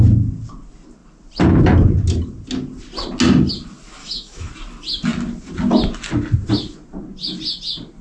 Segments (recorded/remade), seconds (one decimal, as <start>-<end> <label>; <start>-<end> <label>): 0.0-4.0 recorded; 4.0-4.5 remade; 4.5-8.0 recorded